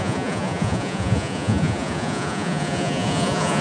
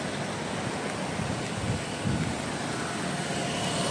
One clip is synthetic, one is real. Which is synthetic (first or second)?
first